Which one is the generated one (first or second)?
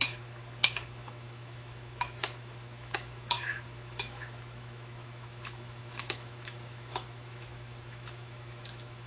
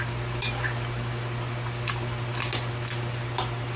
first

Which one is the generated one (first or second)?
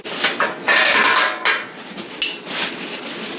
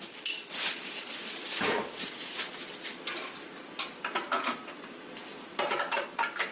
second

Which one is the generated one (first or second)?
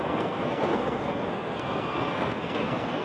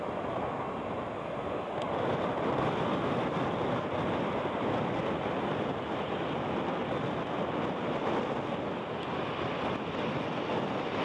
first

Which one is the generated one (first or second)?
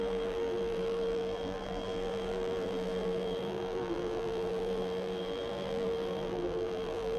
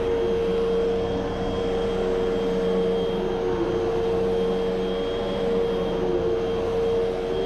first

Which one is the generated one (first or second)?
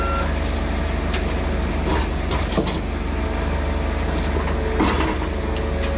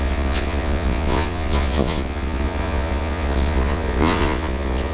second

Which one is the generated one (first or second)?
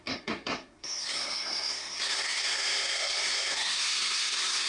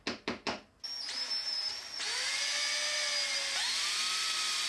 first